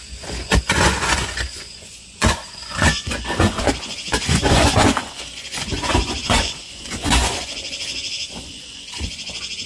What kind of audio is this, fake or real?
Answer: fake